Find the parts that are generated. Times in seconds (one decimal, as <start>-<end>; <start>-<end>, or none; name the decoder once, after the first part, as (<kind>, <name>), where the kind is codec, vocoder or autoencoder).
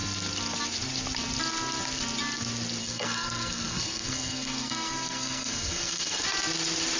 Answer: 2.8-6.2 (codec, SNAC)